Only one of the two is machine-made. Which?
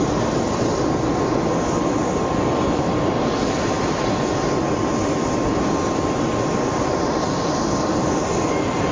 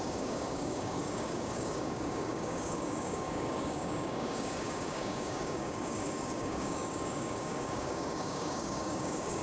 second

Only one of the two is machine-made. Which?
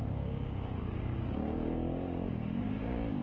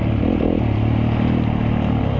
first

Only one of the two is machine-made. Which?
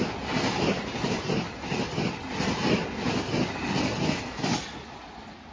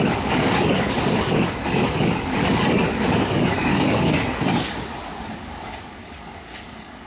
second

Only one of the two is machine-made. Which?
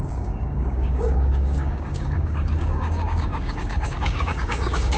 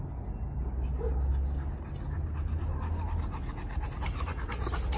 first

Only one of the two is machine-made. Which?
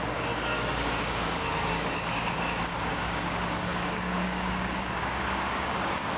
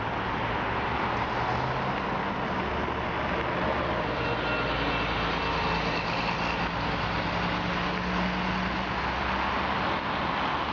first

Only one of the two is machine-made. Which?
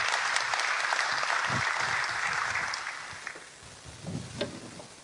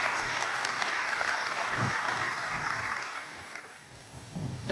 second